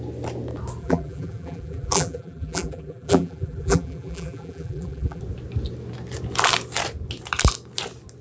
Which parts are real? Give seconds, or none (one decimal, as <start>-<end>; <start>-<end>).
0.0-0.8; 5.2-8.2